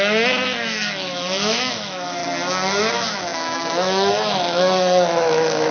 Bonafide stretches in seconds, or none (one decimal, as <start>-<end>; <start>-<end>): 2.2-2.9